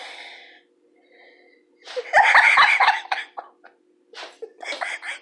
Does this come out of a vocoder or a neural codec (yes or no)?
no